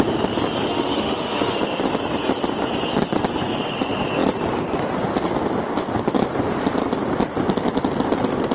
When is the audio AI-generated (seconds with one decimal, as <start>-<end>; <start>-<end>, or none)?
0.7-1.6